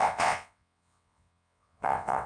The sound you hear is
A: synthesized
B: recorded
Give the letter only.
A